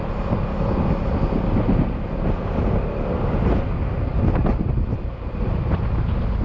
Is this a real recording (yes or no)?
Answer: yes